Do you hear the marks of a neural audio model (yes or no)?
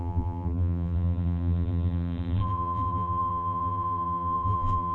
yes